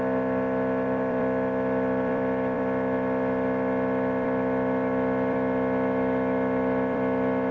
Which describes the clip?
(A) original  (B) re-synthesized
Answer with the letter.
B